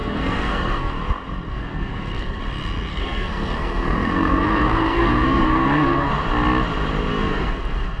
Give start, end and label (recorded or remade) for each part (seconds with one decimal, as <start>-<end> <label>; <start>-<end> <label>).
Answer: 0.0-0.9 remade; 0.9-1.5 recorded; 1.5-2.4 remade; 2.4-2.9 recorded; 2.9-6.1 remade; 6.1-7.1 recorded; 7.1-8.0 remade